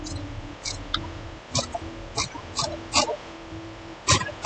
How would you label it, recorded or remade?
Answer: remade